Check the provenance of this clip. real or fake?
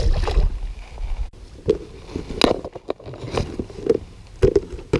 real